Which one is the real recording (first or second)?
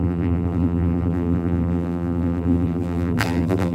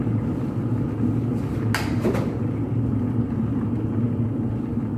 second